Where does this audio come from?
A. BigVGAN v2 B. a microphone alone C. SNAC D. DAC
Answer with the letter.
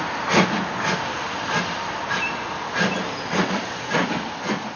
B